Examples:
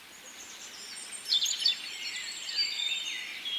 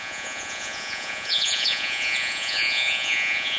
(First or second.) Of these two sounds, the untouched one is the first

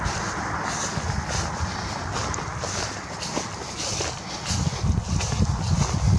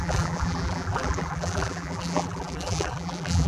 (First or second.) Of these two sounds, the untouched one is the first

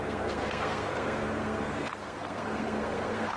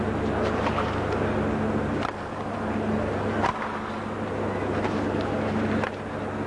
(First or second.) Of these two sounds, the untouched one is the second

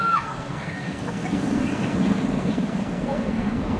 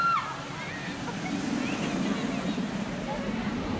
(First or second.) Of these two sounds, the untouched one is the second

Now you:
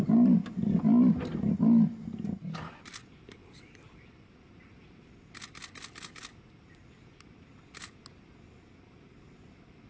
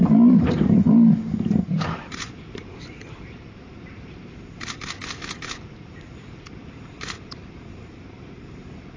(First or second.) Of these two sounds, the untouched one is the first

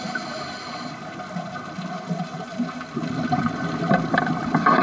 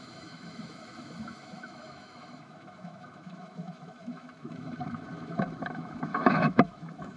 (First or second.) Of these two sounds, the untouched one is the first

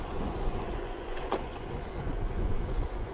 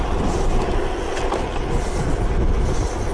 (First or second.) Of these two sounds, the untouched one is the second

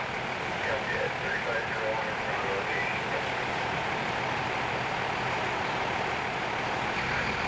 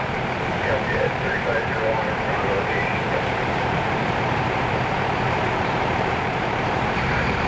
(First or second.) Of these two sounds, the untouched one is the first